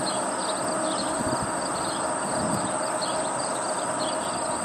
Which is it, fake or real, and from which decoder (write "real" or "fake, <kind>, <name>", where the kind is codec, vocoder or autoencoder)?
real